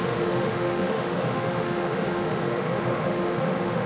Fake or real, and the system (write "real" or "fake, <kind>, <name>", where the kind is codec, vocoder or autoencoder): fake, autoencoder, DAC-VAE